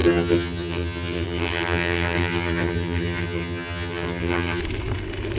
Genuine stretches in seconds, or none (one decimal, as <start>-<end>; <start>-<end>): 4.6-5.4